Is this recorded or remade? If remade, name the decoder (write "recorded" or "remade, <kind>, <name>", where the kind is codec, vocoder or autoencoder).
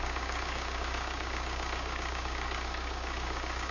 remade, codec, DAC